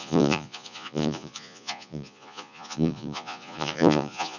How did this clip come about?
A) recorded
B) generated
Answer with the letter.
B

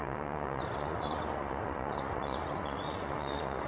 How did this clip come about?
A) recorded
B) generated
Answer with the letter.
B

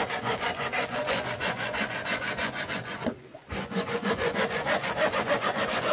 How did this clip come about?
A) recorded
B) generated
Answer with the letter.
B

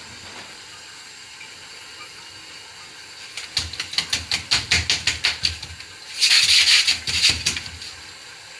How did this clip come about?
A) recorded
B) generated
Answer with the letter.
A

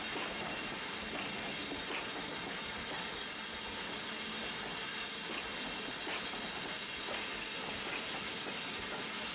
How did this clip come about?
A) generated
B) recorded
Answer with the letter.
B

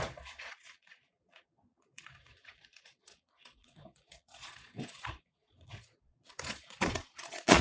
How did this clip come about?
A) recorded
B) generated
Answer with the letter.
B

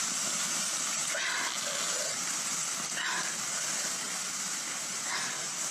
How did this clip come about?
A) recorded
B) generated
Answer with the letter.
A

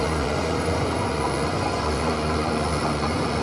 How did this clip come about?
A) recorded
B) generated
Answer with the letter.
B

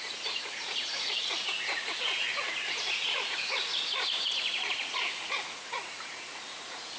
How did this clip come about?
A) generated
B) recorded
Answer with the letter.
A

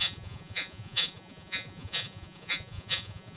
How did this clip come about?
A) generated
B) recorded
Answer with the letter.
A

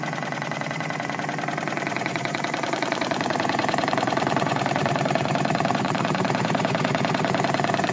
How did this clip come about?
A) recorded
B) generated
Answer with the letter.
B